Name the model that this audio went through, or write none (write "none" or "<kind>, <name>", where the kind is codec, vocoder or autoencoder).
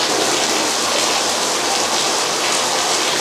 none